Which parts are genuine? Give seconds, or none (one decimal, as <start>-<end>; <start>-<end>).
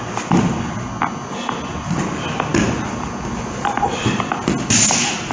0.0-5.3